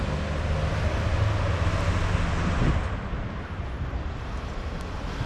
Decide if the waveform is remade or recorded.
recorded